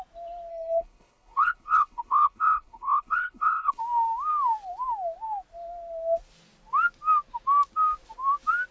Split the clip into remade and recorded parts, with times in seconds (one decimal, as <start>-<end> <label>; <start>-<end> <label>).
0.0-0.5 recorded; 0.5-3.8 remade; 3.8-8.7 recorded